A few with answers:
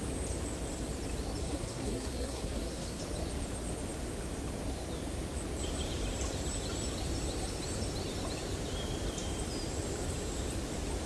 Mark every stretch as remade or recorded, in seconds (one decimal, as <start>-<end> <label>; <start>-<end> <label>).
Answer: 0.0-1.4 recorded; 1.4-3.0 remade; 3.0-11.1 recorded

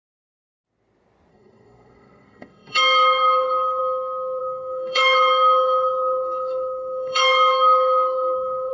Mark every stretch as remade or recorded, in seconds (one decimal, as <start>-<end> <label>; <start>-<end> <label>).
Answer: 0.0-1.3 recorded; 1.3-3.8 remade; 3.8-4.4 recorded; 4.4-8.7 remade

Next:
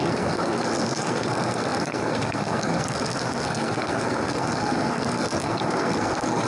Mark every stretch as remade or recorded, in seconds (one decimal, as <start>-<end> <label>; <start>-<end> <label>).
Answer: 0.0-6.5 remade